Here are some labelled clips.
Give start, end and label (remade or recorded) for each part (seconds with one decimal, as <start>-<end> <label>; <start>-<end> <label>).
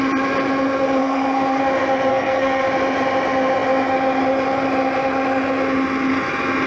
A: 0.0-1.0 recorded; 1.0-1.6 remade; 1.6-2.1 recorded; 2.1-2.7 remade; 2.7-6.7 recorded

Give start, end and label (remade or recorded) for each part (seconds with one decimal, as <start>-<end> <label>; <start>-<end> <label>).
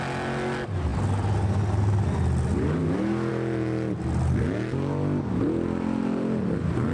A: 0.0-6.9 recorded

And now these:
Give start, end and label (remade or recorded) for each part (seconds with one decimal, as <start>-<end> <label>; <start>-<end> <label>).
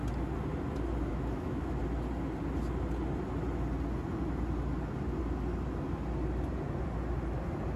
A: 0.0-1.1 recorded; 1.1-1.8 remade; 1.8-7.8 recorded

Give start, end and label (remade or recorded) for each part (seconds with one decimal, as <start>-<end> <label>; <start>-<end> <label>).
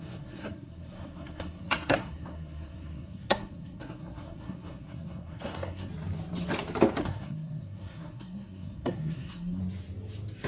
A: 0.0-5.9 remade; 5.9-7.0 recorded; 7.0-9.6 remade; 9.6-10.5 recorded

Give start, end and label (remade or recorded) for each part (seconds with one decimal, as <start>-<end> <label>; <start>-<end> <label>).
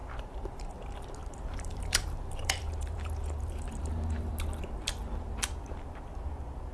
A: 0.0-0.7 remade; 0.7-1.2 recorded; 1.2-4.3 remade; 4.3-6.7 recorded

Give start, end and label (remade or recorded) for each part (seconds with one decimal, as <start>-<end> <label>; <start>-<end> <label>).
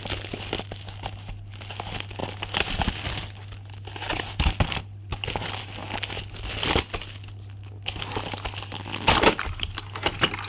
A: 0.0-10.5 recorded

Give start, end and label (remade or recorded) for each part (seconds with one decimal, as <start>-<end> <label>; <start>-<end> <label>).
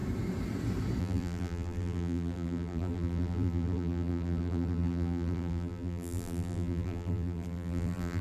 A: 0.0-1.0 recorded; 1.0-8.2 remade